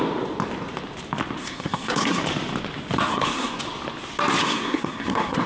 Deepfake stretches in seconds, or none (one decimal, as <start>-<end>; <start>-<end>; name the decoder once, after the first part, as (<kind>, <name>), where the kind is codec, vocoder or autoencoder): 1.4-2.2 (codec, SNAC); 3.1-3.6; 4.4-5.5